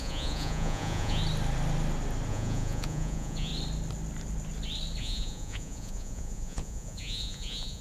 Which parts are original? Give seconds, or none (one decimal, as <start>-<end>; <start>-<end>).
1.2-2.3; 3.5-5.0